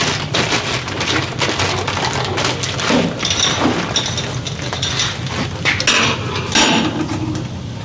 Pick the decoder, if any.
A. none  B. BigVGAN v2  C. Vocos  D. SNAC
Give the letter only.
A